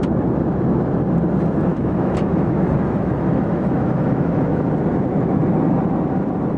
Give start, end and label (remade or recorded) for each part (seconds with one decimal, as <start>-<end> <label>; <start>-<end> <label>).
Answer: 0.0-1.7 recorded; 1.7-4.7 remade; 4.7-6.6 recorded